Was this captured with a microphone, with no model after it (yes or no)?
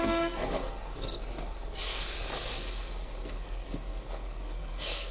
no